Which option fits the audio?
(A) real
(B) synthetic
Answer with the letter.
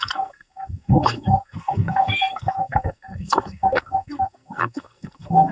B